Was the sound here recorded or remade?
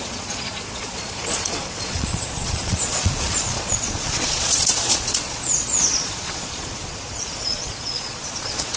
remade